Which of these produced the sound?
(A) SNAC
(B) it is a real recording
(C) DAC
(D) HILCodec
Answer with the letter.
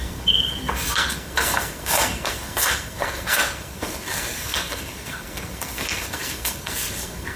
A